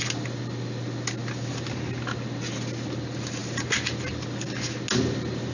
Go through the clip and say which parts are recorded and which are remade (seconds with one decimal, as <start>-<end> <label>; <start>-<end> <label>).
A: 0.0-5.5 recorded